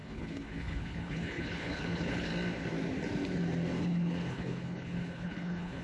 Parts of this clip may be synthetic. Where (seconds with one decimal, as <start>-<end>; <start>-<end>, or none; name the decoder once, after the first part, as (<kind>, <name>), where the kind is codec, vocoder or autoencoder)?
0.0-2.3 (codec, HILCodec); 3.8-5.8